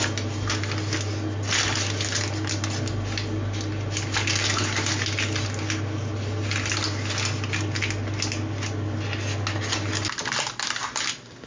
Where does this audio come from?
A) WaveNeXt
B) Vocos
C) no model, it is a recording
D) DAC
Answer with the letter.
C